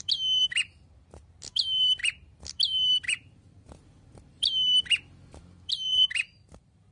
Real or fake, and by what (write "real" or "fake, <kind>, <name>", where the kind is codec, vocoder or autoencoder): fake, vocoder, BigVGAN v2